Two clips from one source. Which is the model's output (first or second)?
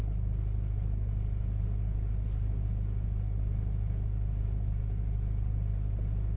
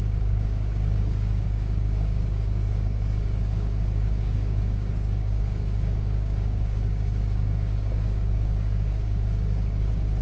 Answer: second